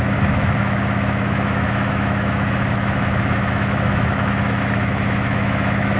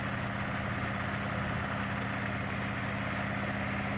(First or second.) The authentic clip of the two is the second